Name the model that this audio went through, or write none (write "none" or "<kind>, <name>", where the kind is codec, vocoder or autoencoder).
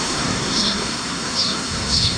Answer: codec, SNAC